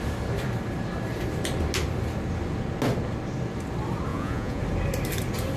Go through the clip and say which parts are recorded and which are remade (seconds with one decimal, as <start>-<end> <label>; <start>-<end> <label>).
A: 0.0-4.1 recorded; 4.1-4.6 remade; 4.6-5.6 recorded